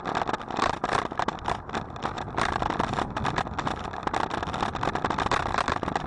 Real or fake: real